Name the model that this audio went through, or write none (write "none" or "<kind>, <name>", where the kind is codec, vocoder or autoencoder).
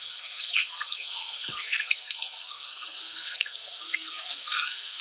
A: codec, SNAC